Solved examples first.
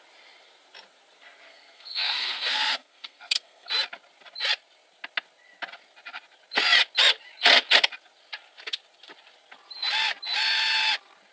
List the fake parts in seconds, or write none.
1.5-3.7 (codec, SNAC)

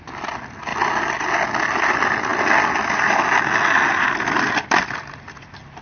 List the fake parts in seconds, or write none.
none